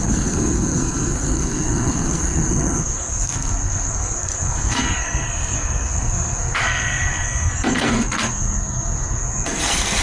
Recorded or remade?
remade